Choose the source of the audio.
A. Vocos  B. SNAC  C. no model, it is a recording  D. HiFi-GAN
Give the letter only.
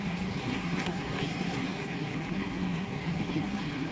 B